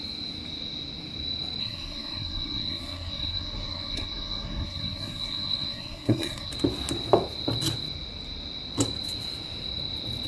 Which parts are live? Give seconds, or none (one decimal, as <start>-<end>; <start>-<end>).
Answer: 0.0-1.6; 6.5-10.3